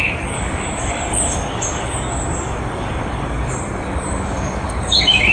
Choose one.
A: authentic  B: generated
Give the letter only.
B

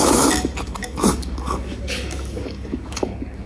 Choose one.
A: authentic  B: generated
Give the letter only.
B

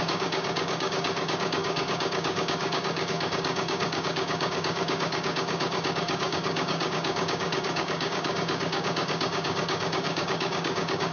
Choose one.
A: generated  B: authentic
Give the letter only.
A